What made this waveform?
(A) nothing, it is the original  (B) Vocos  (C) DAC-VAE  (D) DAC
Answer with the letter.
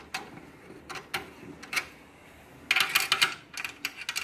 A